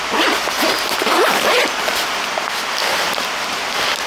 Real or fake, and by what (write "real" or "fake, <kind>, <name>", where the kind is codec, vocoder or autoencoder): real